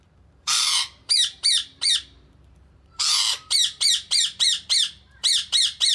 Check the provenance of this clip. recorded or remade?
remade